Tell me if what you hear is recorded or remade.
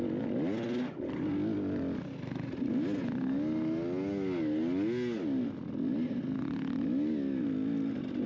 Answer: recorded